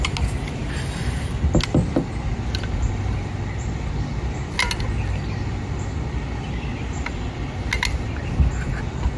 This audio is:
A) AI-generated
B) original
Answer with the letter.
B